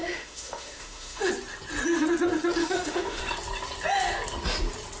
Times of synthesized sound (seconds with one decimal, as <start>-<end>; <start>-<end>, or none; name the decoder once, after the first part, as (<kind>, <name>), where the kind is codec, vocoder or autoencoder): 0.0-1.3 (autoencoder, DAC-VAE); 2.6-3.2